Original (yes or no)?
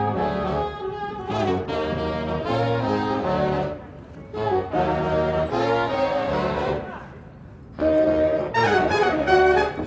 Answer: yes